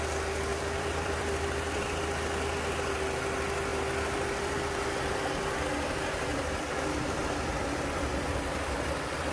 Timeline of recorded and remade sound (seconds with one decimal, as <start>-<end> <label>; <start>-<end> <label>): 0.0-0.5 recorded; 0.5-2.0 remade; 2.0-6.3 recorded; 6.3-7.2 remade; 7.2-9.3 recorded